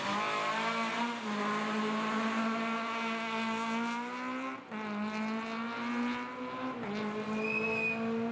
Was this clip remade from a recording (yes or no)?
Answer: no